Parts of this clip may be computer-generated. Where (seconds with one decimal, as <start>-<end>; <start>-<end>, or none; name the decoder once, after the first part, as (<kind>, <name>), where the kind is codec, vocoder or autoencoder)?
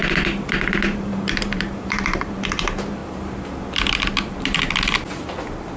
0.7-3.0 (vocoder, BigVGAN v2)